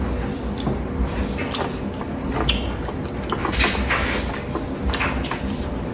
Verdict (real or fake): real